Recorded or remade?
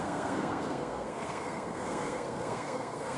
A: remade